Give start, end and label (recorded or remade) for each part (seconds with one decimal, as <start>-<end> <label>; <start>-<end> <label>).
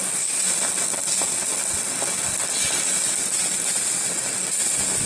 0.0-5.1 recorded